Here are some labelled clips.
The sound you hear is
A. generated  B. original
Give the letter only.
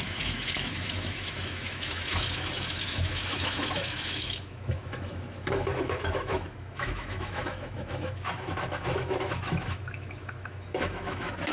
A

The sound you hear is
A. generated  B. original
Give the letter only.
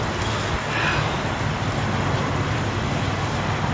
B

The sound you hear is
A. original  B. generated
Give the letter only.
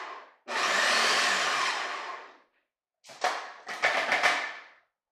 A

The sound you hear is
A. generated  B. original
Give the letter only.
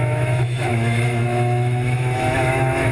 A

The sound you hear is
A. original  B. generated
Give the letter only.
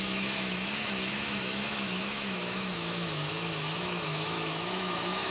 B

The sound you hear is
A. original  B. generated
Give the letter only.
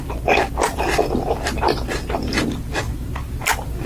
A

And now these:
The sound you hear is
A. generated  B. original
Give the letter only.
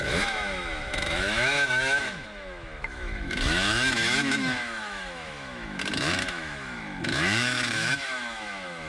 A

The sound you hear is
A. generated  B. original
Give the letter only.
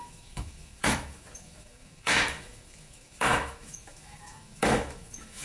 A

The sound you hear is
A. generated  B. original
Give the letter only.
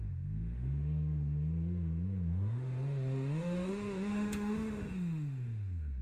A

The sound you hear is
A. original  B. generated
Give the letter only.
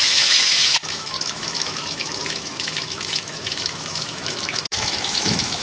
B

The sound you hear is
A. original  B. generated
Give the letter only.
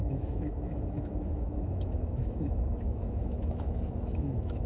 B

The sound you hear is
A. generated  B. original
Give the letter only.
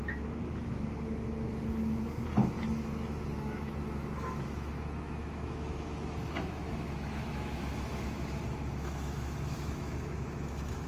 A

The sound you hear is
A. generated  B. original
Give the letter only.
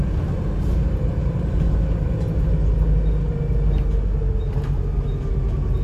B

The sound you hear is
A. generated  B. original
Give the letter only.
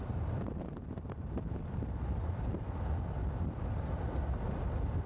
B